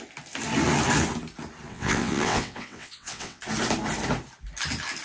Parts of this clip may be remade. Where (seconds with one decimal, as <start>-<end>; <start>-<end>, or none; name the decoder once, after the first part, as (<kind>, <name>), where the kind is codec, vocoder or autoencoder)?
1.7-3.4 (vocoder, WaveNeXt)